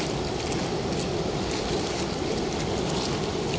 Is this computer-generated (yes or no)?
no